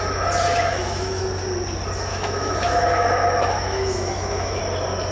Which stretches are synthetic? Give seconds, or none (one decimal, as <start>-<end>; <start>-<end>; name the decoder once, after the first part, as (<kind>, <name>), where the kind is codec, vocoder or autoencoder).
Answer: 0.5-1.2 (autoencoder, DAC-VAE); 2.1-4.6